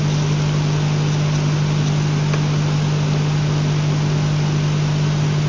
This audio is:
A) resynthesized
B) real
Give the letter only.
B